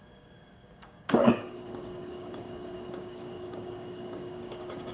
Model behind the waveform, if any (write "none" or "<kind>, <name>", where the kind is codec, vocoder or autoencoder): codec, DAC